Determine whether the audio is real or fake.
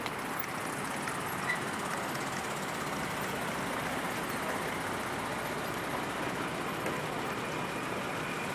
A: real